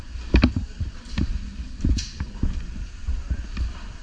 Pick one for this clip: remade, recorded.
recorded